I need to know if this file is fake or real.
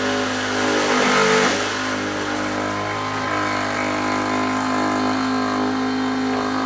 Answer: real